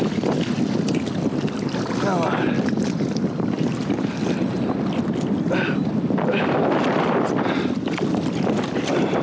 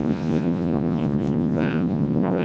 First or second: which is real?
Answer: first